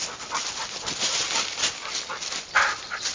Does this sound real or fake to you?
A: real